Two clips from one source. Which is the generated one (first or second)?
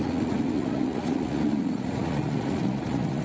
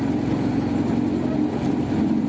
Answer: first